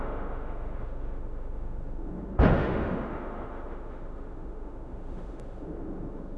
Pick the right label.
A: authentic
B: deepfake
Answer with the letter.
B